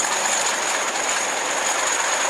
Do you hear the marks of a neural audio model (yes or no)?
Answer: no